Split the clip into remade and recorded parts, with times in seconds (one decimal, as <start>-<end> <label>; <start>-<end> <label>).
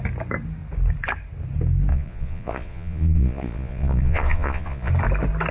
0.0-1.9 recorded; 1.9-4.9 remade; 4.9-5.5 recorded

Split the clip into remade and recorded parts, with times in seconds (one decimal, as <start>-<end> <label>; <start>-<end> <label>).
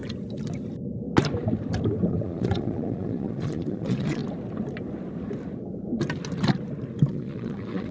0.0-2.1 recorded; 2.1-4.2 remade; 4.2-7.1 recorded; 7.1-7.9 remade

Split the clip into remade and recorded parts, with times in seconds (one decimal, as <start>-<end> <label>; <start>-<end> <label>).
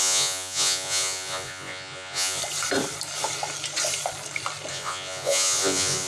0.0-2.4 remade; 2.4-4.7 recorded; 4.7-6.1 remade